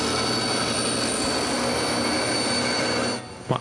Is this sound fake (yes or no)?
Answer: no